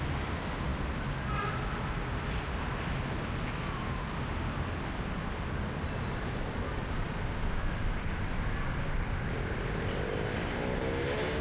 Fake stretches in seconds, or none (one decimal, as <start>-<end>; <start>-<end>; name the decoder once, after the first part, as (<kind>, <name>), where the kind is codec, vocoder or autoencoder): none